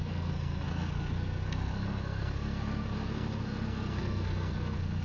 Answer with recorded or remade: remade